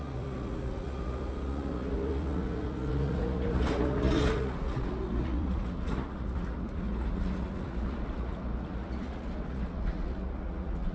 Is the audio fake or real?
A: fake